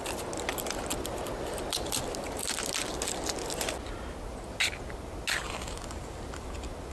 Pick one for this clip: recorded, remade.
recorded